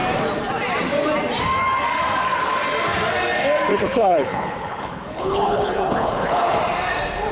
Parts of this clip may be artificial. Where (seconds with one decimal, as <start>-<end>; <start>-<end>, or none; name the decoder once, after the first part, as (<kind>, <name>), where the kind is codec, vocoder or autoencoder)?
3.7-6.6 (codec, HILCodec)